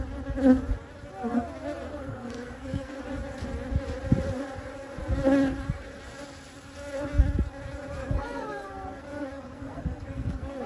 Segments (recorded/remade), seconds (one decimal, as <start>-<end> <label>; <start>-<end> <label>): 0.0-1.9 recorded; 1.9-3.0 remade; 3.0-8.0 recorded; 8.0-10.7 remade